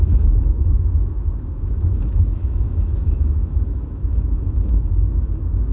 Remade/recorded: remade